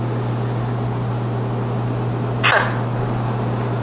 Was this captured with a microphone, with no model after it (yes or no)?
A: yes